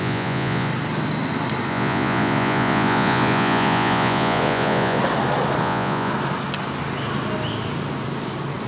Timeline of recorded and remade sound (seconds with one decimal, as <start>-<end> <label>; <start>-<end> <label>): 0.0-0.7 remade; 0.7-1.7 recorded; 1.7-5.0 remade; 5.0-5.6 recorded; 5.6-6.1 remade; 6.1-8.7 recorded

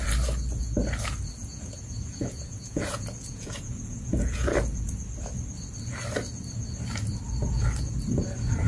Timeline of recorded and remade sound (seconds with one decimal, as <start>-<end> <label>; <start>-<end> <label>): 0.0-1.4 recorded; 1.4-4.9 remade; 4.9-8.7 recorded

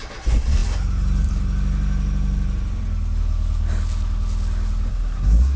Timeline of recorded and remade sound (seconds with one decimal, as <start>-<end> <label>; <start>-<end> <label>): 0.0-4.9 recorded; 4.9-5.6 remade

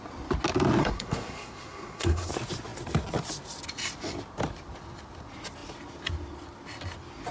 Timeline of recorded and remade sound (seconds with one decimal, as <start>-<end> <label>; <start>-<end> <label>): 0.0-0.8 recorded; 0.8-2.3 remade; 2.3-7.3 recorded